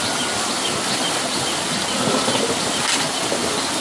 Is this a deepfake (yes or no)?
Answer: no